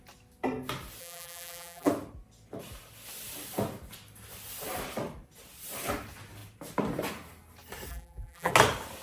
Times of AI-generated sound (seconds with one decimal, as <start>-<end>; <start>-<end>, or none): 1.0-1.9; 7.9-8.5